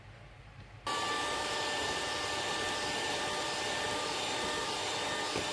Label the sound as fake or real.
real